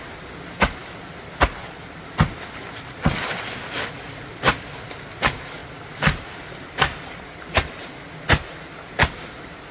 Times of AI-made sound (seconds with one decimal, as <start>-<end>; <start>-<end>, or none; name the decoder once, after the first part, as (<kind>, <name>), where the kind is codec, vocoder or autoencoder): none